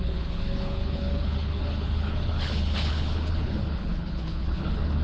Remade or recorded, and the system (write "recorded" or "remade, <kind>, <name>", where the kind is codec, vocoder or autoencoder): remade, codec, HILCodec